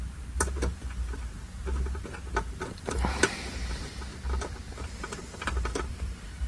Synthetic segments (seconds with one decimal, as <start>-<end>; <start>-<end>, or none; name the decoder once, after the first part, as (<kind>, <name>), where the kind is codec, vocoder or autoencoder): 0.0-1.4 (vocoder, BigVGAN v2); 2.5-4.1; 4.7-6.5